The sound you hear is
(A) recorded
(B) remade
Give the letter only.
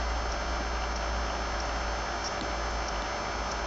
A